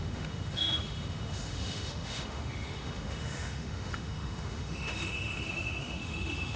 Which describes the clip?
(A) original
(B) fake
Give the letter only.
B